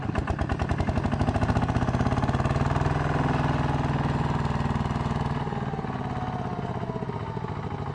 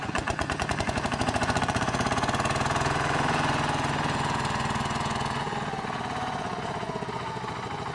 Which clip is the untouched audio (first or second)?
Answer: first